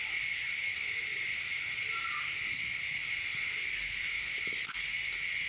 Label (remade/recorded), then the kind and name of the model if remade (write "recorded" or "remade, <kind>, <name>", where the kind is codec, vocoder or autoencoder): recorded